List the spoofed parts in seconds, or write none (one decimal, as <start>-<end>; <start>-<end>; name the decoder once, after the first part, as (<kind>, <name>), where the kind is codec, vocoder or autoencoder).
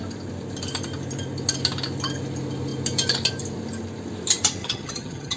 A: 4.6-5.4 (vocoder, HiFi-GAN)